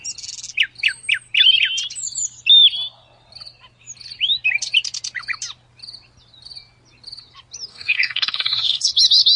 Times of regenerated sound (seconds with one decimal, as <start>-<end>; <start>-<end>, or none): 7.7-8.9